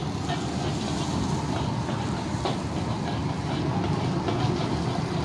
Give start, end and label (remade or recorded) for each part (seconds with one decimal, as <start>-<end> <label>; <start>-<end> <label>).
0.0-5.2 recorded